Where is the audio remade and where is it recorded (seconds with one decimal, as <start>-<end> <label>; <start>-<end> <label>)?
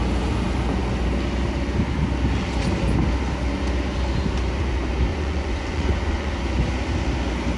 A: 0.0-5.1 recorded; 5.1-6.3 remade; 6.3-7.6 recorded